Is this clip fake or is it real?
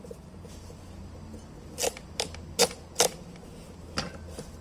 real